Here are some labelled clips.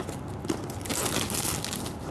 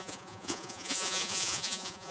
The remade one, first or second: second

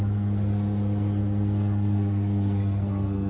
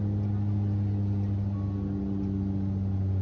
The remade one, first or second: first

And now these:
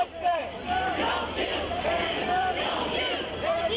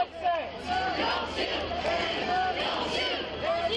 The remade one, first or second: first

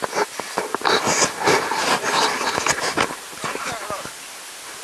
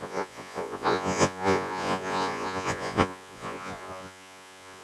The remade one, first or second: second